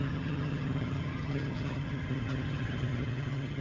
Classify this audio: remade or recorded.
remade